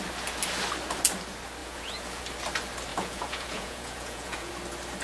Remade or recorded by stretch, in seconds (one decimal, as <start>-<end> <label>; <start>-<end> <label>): 0.0-1.6 recorded; 1.6-2.2 remade; 2.2-2.9 recorded; 2.9-4.5 remade; 4.5-5.0 recorded